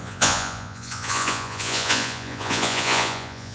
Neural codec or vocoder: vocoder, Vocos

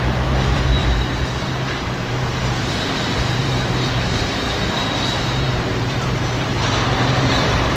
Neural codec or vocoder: vocoder, BigVGAN v2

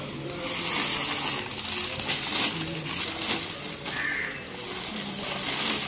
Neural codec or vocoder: none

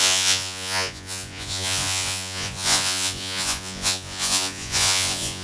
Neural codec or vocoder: vocoder, Vocos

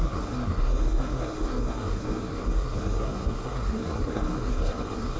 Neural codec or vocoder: codec, SNAC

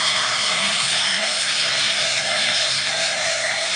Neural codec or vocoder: codec, SNAC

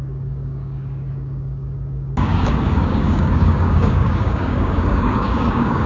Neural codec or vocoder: codec, DAC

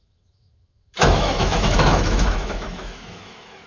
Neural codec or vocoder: autoencoder, DAC-VAE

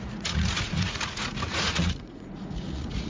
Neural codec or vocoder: vocoder, Vocos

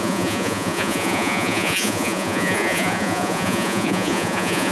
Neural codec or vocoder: vocoder, Vocos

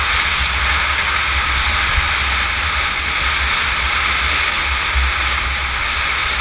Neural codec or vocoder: none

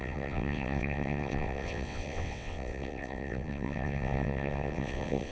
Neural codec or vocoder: vocoder, WaveNeXt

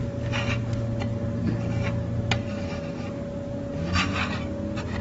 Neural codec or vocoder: none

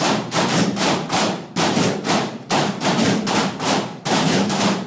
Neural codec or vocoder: vocoder, BigVGAN v2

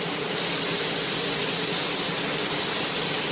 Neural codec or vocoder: none